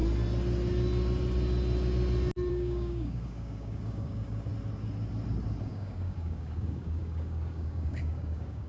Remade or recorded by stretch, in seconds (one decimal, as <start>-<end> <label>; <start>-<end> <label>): 0.0-2.5 recorded; 2.5-4.5 remade; 4.5-5.6 recorded; 5.6-8.7 remade